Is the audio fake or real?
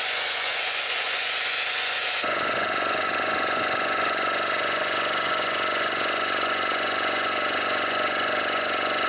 fake